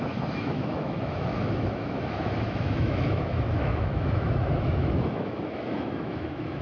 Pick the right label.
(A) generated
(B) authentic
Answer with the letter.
A